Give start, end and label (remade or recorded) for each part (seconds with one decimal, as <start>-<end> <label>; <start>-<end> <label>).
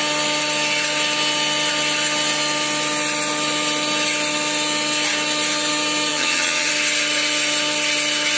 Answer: 0.0-6.1 recorded; 6.1-6.7 remade; 6.7-8.4 recorded